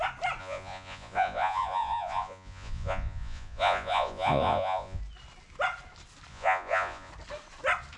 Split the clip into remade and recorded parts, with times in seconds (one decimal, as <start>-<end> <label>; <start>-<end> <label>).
0.0-0.4 recorded; 0.4-5.0 remade; 5.0-6.3 recorded; 6.3-7.1 remade; 7.1-8.0 recorded